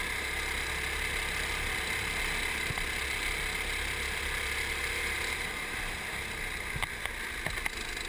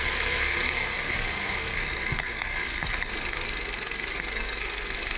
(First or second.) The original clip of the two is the first